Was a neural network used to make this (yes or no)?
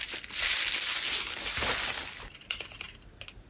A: no